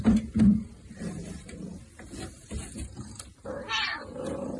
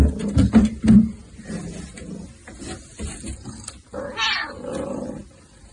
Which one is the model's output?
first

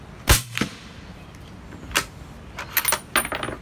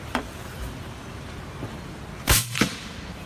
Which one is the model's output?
second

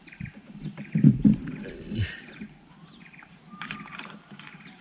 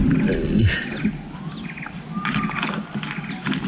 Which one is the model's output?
first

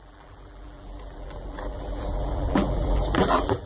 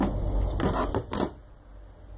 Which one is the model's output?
first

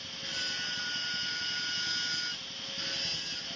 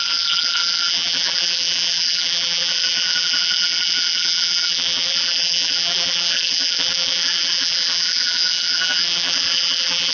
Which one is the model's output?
second